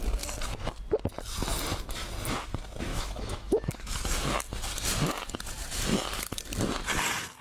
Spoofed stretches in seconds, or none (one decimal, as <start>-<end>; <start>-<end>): 2.9-3.9